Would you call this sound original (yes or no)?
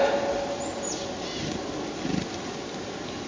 yes